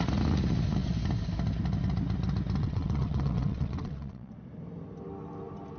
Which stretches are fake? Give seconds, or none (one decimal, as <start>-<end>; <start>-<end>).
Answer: 2.6-4.3